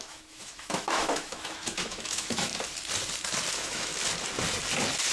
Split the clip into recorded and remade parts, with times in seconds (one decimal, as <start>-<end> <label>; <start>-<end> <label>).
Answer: 0.0-2.5 remade; 2.5-3.5 recorded; 3.5-3.9 remade; 3.9-5.1 recorded